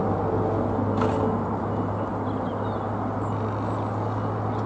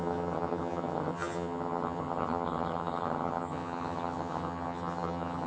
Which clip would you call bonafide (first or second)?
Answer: first